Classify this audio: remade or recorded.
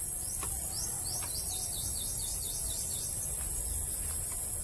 recorded